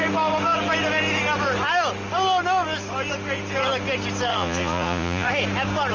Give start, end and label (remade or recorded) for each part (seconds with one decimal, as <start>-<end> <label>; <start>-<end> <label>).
0.0-4.3 recorded; 4.3-5.3 remade; 5.3-5.9 recorded